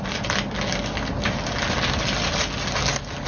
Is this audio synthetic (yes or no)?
no